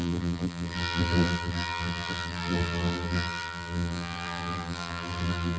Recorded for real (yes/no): no